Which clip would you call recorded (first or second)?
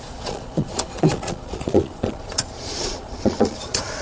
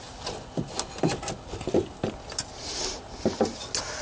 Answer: second